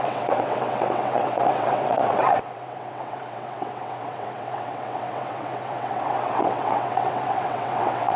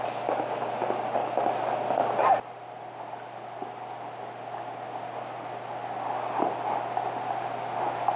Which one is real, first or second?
second